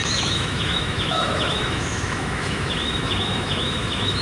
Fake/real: fake